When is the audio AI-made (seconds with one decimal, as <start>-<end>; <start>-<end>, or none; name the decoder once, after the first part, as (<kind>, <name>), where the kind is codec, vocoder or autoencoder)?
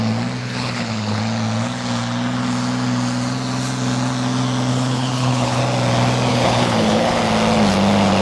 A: 0.4-1.2 (codec, HILCodec); 4.7-5.6; 6.3-7.2